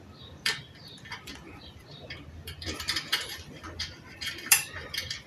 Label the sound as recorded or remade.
remade